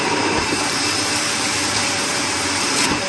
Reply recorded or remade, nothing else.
remade